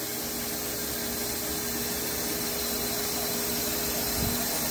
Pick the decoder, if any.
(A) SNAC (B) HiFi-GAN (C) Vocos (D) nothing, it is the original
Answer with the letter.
D